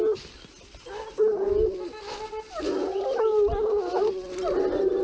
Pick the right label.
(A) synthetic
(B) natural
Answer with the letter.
B